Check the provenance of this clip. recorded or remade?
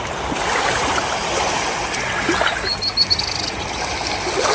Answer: recorded